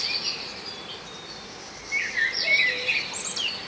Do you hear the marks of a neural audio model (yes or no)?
no